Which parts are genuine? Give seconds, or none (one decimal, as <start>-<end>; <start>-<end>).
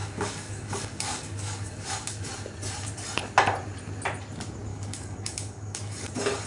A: 2.3-4.7; 6.1-6.5